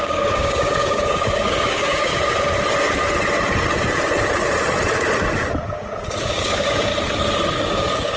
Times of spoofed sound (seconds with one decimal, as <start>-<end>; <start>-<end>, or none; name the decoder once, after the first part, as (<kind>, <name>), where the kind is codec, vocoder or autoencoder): 0.0-2.1 (codec, DAC); 6.2-6.9; 7.5-8.2